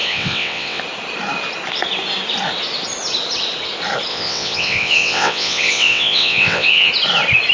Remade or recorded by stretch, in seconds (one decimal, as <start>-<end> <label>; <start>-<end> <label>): 0.0-0.8 remade; 0.8-4.1 recorded; 4.1-6.9 remade; 6.9-7.5 recorded